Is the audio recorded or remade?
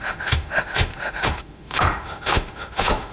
remade